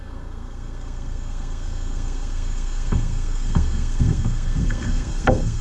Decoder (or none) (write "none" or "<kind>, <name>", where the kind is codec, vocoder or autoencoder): codec, SNAC